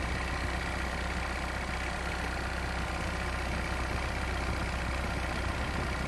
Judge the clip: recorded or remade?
recorded